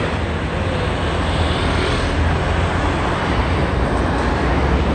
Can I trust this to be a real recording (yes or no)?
yes